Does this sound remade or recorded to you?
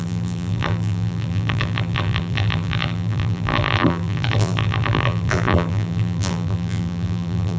remade